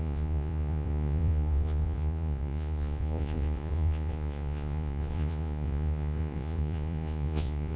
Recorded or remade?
remade